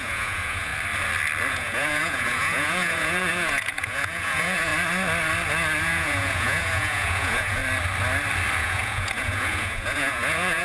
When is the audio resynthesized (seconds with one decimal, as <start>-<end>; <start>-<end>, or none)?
0.0-0.7; 1.5-4.7; 5.8-7.6; 8.6-10.6